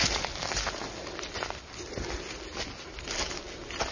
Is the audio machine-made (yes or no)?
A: no